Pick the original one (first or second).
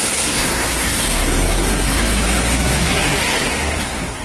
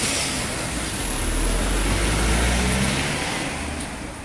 second